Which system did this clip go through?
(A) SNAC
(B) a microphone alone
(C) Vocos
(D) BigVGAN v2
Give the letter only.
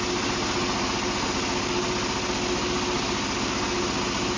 B